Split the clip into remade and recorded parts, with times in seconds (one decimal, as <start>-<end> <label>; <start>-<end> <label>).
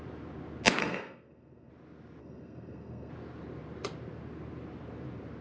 0.0-0.8 recorded; 0.8-1.7 remade; 1.7-2.2 recorded; 2.2-3.1 remade; 3.1-5.4 recorded